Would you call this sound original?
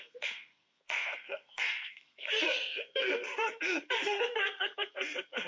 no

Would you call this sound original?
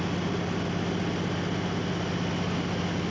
yes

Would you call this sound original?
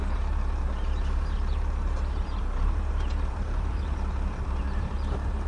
no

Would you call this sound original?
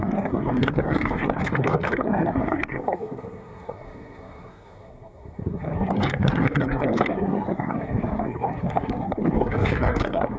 no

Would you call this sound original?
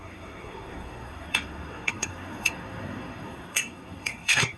no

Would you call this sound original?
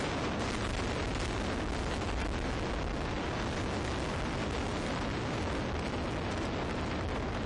yes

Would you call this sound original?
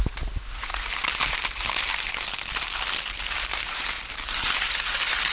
yes